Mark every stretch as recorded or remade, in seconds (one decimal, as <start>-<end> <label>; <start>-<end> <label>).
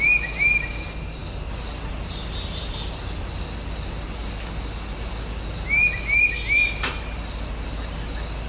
0.0-8.5 recorded